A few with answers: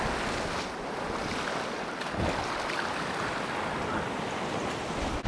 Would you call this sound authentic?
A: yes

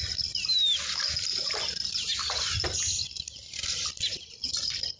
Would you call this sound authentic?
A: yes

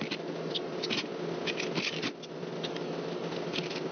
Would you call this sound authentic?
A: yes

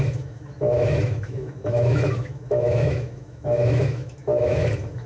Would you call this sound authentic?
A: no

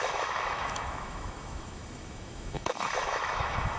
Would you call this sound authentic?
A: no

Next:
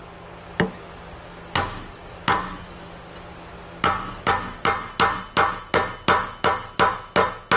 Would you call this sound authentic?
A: yes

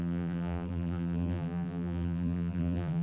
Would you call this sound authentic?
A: no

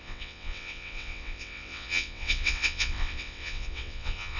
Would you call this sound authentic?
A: no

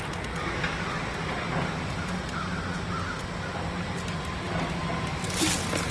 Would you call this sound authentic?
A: yes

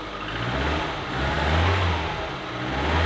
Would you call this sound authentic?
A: yes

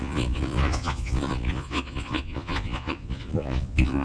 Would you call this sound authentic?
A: no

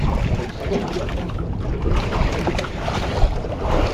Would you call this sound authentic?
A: no